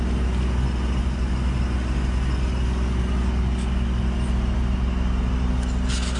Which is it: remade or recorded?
recorded